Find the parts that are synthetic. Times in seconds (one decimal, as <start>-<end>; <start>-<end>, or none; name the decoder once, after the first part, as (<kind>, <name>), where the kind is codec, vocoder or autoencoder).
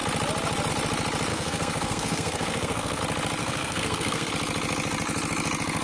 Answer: 1.3-3.0 (codec, SNAC); 3.4-4.3